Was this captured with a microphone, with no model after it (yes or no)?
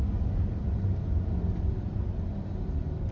no